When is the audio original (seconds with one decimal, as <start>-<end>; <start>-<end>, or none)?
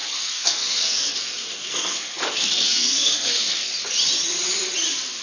3.7-5.2